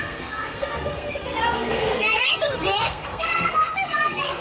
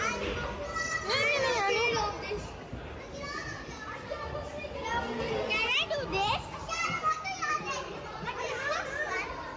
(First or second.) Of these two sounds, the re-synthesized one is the first